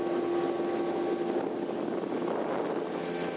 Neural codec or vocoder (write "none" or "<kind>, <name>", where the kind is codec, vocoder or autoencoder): none